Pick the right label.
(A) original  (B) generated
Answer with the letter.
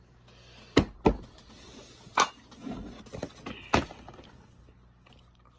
A